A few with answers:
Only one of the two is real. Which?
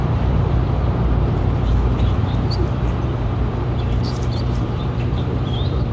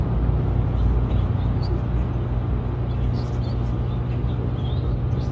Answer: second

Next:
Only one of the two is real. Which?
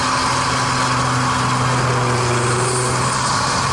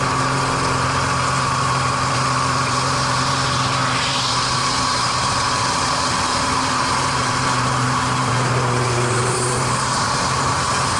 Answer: first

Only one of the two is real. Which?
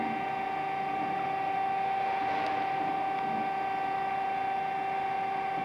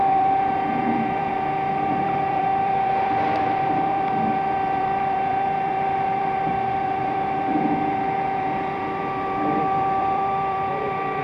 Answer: first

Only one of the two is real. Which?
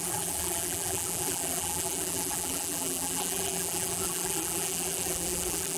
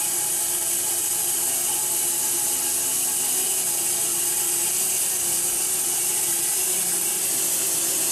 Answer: second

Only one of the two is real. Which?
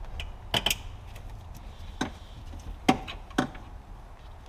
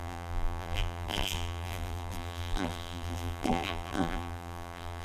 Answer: first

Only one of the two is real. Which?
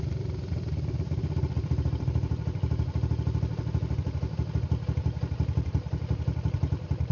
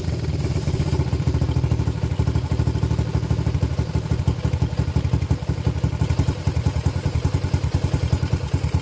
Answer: second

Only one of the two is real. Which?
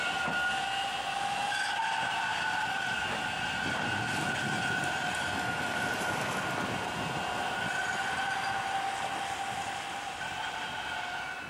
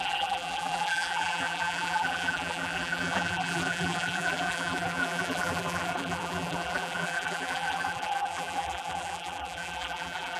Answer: first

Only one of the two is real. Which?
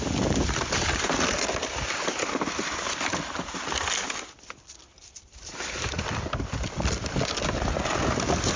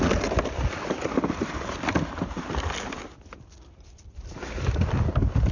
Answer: second